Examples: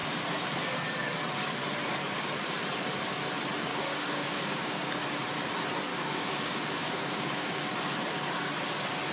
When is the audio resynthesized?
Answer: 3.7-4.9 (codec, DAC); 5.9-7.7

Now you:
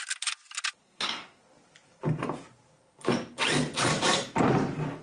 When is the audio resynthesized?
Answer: 0.8-1.4 (codec, SNAC)

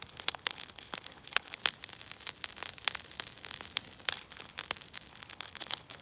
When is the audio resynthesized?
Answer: 0.0-1.6 (codec, HILCodec); 4.1-4.6; 5.1-6.0

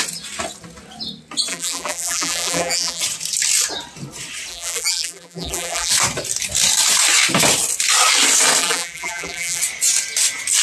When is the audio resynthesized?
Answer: 1.5-3.0 (vocoder, BigVGAN v2); 4.5-5.9; 8.6-9.6

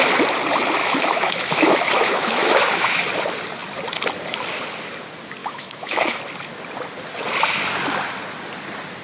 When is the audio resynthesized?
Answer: 0.8-3.0 (autoencoder, DAC-VAE); 5.4-6.2

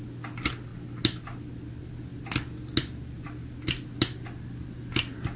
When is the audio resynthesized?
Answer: none